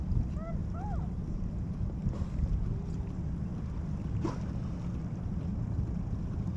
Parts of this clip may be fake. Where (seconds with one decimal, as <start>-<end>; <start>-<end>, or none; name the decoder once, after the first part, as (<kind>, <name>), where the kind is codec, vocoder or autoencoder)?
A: 0.6-2.9 (vocoder, BigVGAN v2)

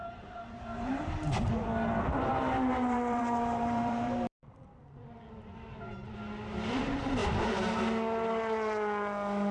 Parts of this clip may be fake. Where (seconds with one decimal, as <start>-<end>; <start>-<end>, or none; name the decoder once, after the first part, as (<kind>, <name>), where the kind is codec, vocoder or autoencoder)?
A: 0.0-1.0 (vocoder, BigVGAN v2); 2.3-5.0; 7.2-7.8

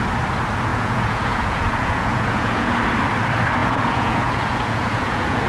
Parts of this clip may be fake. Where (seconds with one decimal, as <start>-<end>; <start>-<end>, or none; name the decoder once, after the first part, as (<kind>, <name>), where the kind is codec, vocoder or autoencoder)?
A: 0.7-2.8 (vocoder, Vocos); 3.6-5.5

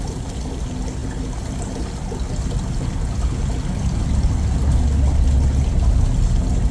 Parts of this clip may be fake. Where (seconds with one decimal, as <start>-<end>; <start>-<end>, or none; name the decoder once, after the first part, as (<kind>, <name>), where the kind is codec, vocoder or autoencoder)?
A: none

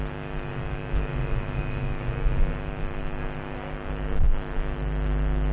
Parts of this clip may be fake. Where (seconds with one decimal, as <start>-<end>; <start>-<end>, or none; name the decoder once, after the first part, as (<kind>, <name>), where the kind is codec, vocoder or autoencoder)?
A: none

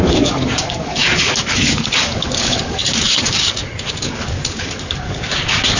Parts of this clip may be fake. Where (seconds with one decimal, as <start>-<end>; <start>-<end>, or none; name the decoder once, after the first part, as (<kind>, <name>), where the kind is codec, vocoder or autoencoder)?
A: 0.0-5.8 (codec, DAC)

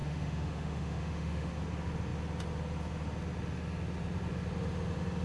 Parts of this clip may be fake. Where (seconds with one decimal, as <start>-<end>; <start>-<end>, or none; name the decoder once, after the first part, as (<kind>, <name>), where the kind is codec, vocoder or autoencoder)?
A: 0.0-1.5 (autoencoder, DAC-VAE)